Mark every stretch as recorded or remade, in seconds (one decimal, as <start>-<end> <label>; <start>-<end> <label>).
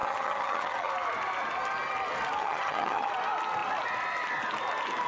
0.0-0.9 remade; 0.9-2.4 recorded; 2.4-3.1 remade; 3.1-5.1 recorded